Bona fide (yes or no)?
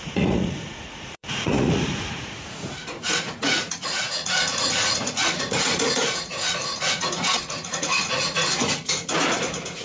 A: no